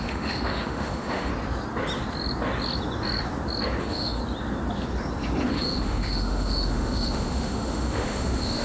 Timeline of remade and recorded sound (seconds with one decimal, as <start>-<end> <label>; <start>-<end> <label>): 0.0-1.3 remade; 1.3-3.8 recorded; 3.8-4.2 remade; 4.2-5.5 recorded; 5.5-8.6 remade